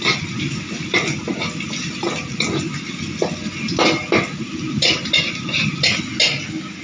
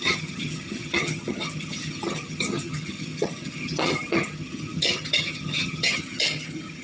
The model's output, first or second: second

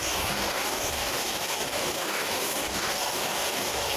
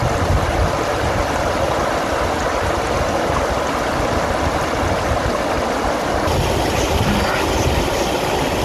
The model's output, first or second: first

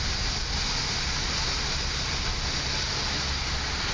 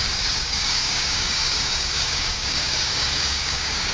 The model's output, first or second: second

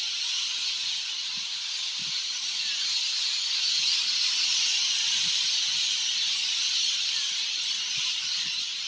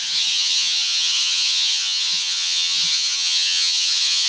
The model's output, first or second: second